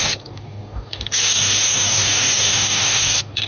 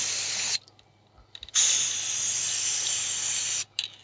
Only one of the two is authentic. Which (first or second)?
second